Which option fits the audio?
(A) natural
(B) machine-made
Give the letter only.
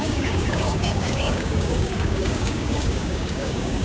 B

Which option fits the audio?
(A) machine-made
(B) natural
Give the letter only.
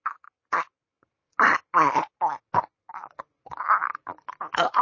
B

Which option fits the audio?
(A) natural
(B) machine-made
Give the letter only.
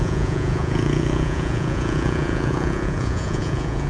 B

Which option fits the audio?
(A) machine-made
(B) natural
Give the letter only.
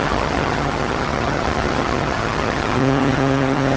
A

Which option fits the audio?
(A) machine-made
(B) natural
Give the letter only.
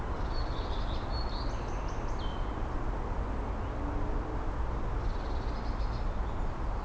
B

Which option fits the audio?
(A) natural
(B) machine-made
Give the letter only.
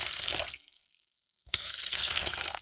B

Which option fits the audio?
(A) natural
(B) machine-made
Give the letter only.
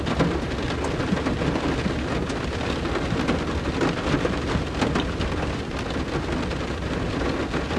A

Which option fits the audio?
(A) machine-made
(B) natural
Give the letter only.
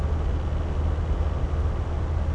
B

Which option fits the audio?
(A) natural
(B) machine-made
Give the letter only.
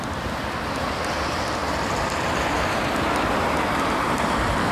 B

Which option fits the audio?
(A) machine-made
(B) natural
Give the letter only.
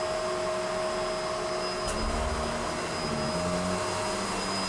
B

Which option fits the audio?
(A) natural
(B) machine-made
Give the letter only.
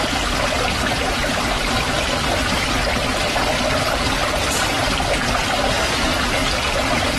A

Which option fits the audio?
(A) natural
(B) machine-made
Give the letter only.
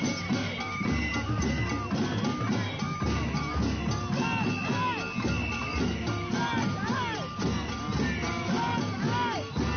A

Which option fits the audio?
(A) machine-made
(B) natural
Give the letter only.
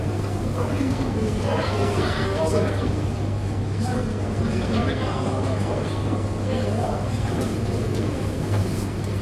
A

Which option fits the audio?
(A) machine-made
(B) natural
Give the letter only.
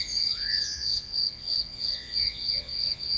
A